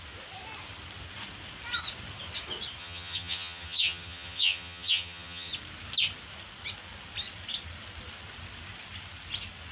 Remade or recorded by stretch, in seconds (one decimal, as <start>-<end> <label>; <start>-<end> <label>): 0.0-2.8 recorded; 2.8-5.5 remade; 5.5-9.7 recorded